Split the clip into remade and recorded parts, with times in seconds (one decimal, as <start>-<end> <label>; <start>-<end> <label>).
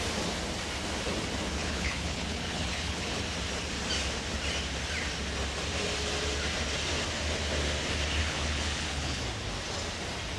0.0-1.6 recorded; 1.6-3.2 remade; 3.2-8.2 recorded; 8.2-9.2 remade; 9.2-10.4 recorded